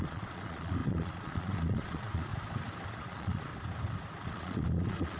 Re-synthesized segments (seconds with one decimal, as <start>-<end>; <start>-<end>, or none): 0.0-2.3; 2.9-3.5; 4.2-5.2